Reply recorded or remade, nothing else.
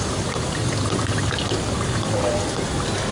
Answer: recorded